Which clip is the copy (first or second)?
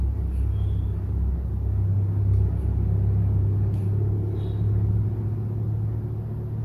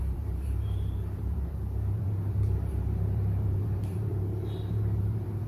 second